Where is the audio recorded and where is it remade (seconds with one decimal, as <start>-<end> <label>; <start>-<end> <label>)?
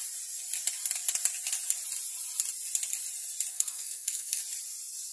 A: 0.0-3.5 recorded; 3.5-4.4 remade; 4.4-5.1 recorded